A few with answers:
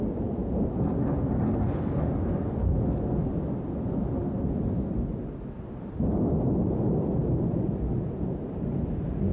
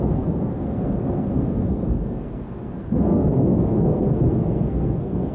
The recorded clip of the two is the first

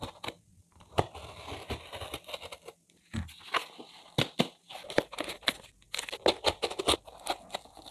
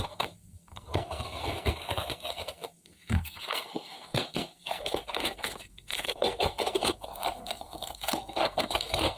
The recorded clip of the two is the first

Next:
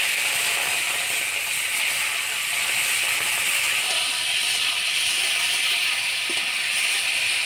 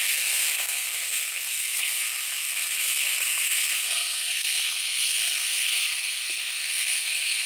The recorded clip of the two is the first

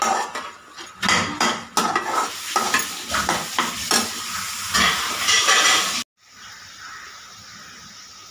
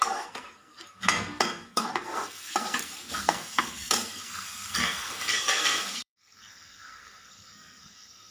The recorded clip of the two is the first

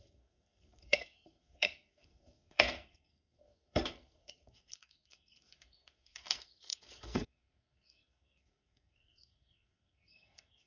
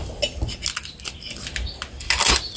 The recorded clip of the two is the second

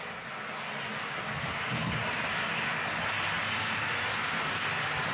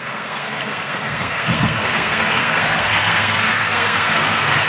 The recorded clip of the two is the first